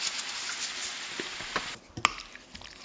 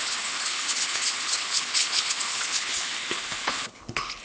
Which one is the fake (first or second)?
second